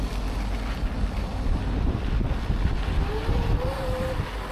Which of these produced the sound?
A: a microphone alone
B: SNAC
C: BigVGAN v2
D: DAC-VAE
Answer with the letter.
A